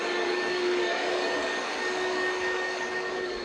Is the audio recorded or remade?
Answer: remade